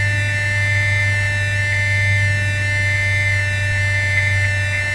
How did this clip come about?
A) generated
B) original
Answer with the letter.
B